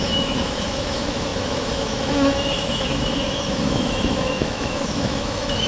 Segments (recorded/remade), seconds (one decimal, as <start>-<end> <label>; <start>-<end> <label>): 0.0-5.7 remade